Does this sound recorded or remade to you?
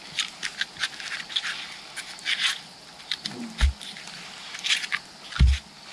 recorded